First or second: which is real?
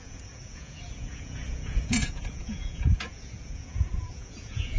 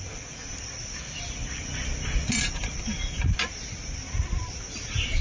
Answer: second